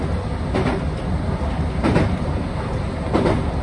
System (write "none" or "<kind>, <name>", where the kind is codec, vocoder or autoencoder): none